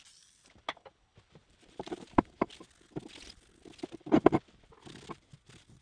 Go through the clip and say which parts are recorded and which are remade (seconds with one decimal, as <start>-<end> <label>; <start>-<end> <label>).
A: 0.0-1.4 recorded; 1.4-2.5 remade; 2.5-5.8 recorded